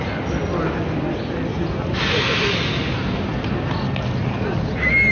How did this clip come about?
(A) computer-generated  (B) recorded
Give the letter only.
B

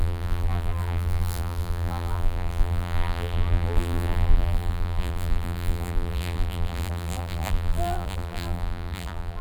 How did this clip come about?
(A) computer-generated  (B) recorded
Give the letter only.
A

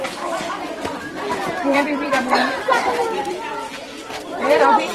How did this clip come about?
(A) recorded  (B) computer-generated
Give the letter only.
B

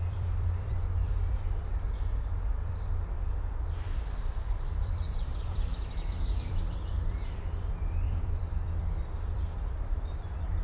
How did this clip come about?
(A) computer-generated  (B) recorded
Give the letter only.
A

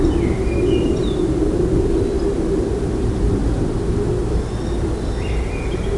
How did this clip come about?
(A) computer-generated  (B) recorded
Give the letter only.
B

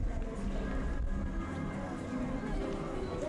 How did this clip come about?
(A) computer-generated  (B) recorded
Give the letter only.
B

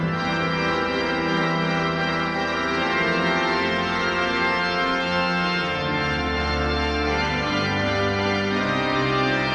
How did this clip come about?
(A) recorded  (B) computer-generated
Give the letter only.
A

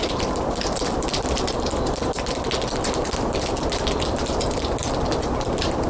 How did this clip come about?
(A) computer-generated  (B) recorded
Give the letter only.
A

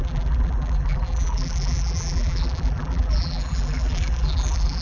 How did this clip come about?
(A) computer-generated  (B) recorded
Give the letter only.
A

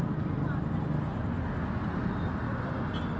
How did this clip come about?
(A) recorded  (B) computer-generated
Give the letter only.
A